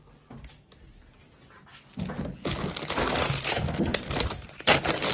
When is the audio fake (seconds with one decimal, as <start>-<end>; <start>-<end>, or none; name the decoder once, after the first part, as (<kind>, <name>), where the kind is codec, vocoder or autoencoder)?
none